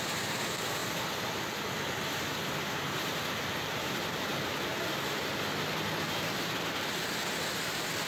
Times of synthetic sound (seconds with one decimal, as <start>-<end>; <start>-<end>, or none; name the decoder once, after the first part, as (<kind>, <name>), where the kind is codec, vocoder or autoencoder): none